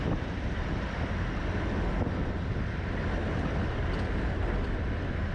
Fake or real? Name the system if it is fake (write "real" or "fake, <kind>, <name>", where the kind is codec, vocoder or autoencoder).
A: real